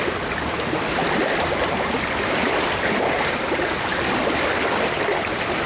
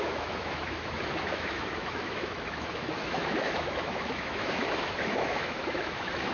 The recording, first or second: first